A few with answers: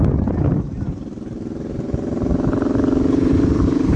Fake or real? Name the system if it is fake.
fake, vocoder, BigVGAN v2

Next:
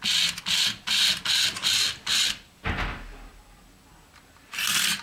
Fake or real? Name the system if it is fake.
real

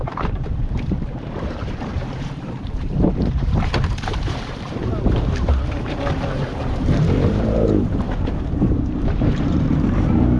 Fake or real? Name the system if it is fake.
fake, vocoder, BigVGAN v2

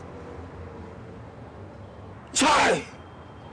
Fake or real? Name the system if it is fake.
real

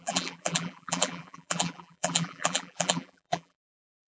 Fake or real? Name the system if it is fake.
fake, vocoder, BigVGAN v2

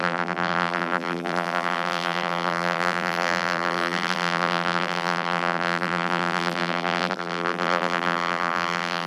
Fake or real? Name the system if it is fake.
fake, vocoder, BigVGAN v2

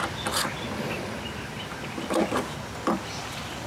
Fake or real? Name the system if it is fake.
real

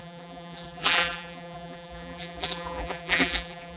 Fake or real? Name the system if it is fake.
fake, vocoder, BigVGAN v2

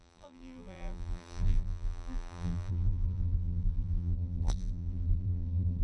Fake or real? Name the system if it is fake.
fake, vocoder, BigVGAN v2